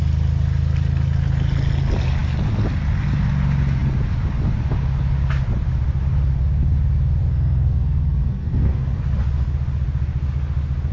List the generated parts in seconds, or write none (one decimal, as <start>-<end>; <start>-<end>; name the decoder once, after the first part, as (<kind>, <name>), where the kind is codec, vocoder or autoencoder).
7.2-9.0 (codec, SNAC)